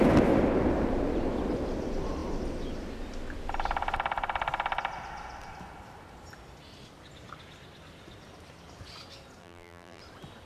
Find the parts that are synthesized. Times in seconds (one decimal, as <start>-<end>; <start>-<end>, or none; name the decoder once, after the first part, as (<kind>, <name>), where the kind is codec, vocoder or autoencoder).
9.4-10.0 (vocoder, BigVGAN v2)